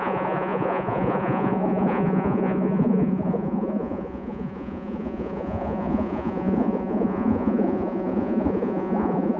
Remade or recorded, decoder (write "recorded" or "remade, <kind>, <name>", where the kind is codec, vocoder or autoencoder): remade, vocoder, Vocos